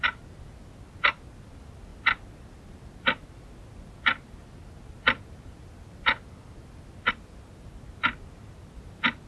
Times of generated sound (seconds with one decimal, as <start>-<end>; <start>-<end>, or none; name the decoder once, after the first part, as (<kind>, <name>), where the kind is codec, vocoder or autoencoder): none